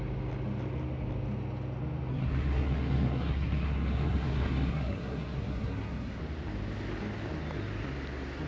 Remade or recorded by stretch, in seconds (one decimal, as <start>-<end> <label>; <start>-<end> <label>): 0.0-2.1 recorded; 2.1-6.2 remade; 6.2-8.5 recorded